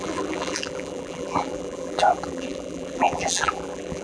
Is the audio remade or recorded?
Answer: remade